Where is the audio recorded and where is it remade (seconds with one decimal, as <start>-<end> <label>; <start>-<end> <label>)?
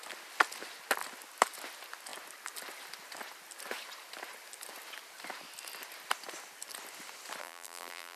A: 0.0-7.4 recorded; 7.4-8.2 remade